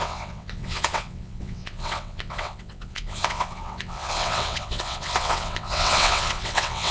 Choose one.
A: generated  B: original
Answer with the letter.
A